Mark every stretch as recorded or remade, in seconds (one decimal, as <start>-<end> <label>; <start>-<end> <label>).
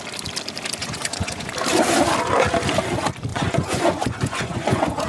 0.0-0.8 recorded; 0.8-1.5 remade; 1.5-3.3 recorded; 3.3-5.1 remade